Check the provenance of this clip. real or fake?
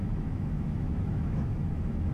fake